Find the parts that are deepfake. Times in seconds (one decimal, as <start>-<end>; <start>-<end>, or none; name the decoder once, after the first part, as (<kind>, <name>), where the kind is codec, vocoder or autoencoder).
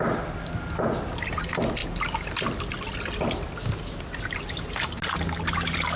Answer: none